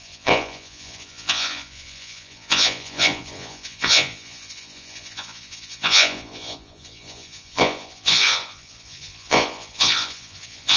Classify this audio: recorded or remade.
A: remade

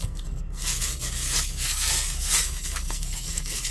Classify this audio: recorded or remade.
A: remade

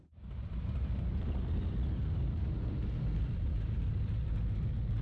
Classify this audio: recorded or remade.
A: remade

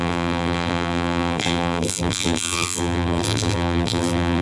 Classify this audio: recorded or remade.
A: remade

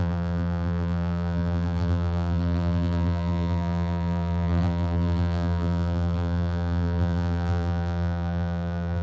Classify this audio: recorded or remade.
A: remade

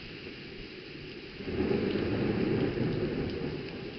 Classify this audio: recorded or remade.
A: recorded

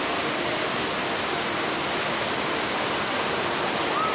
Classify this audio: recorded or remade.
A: remade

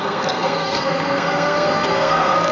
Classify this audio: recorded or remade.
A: remade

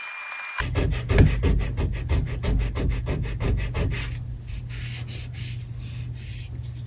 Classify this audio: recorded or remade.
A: recorded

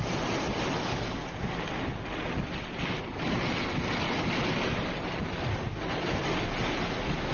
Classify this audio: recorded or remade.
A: recorded